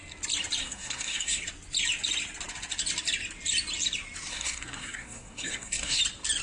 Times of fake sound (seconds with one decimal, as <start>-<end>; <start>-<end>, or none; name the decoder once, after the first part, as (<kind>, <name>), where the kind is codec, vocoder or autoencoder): 0.6-1.4 (codec, SNAC); 4.3-6.0